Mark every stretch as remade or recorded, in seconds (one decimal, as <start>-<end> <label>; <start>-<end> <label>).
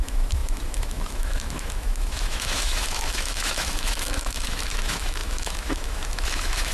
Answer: 0.0-6.7 remade